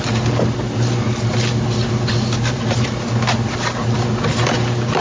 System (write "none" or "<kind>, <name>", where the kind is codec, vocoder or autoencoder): none